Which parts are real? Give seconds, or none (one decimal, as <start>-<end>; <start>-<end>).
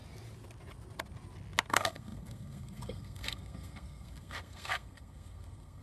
0.0-1.7